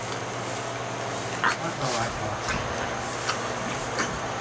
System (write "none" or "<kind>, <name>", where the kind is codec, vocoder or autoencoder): none